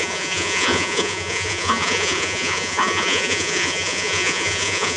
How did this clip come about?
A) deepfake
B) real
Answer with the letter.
A